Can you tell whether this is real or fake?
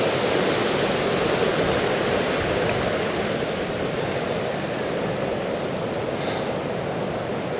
real